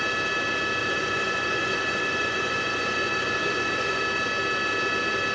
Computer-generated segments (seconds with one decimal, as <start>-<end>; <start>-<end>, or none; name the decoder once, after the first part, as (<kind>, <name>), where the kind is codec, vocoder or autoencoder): 0.8-4.0 (vocoder, Vocos)